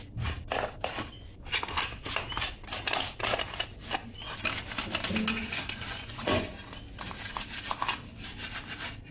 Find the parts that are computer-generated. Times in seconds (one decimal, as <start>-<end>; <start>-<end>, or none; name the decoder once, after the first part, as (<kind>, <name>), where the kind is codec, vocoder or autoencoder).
5.4-6.5 (vocoder, Vocos)